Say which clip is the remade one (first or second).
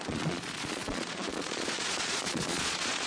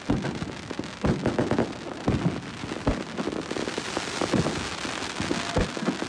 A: first